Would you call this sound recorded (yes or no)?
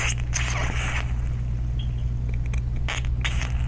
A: yes